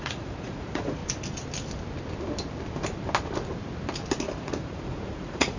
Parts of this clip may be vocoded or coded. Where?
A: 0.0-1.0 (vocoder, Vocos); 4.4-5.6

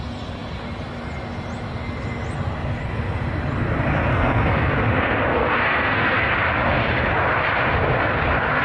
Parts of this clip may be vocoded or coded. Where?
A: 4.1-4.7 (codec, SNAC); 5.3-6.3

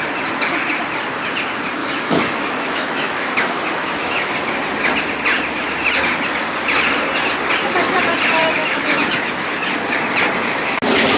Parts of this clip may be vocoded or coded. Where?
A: 1.8-4.3 (autoencoder, DAC-VAE); 8.4-9.7